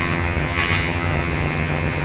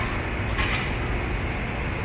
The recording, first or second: second